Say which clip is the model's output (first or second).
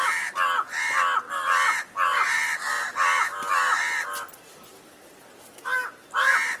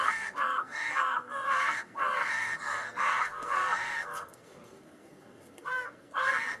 second